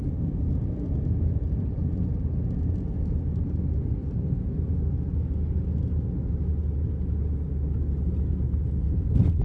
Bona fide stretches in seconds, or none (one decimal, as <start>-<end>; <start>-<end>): 0.0-9.4